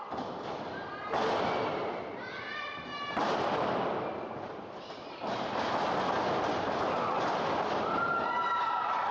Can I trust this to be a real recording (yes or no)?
yes